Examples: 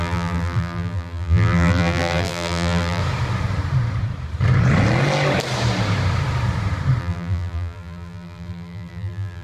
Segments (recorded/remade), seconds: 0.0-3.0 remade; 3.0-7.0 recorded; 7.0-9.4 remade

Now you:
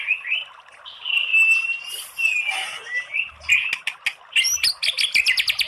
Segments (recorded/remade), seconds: 0.0-5.7 recorded

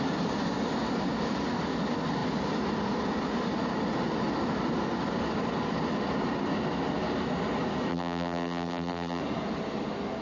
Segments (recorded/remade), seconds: 0.0-7.9 recorded; 7.9-9.2 remade; 9.2-10.2 recorded

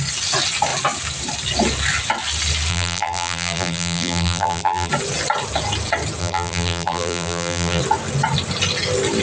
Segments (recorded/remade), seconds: 0.0-2.7 recorded; 2.7-4.9 remade; 4.9-6.2 recorded; 6.2-7.8 remade; 7.8-9.2 recorded

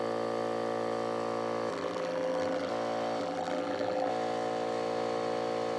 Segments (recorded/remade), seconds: 0.0-1.7 recorded; 1.7-2.7 remade; 2.7-3.2 recorded; 3.2-4.1 remade; 4.1-5.8 recorded

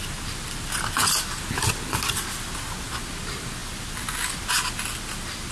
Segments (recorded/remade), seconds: 0.0-5.5 recorded

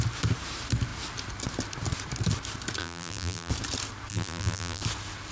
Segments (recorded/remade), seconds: 0.0-2.8 recorded; 2.8-3.5 remade; 3.5-4.1 recorded; 4.1-4.8 remade; 4.8-5.3 recorded

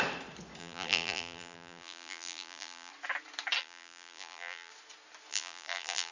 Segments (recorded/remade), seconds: 0.0-0.6 recorded; 0.6-2.9 remade; 2.9-3.6 recorded; 3.6-4.7 remade; 4.7-5.3 recorded; 5.3-6.1 remade